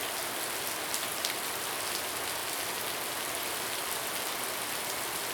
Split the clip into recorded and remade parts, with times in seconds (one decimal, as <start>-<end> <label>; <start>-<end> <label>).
0.0-5.3 recorded